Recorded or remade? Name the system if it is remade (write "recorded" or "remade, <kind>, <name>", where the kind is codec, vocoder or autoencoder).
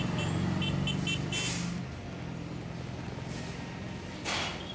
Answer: recorded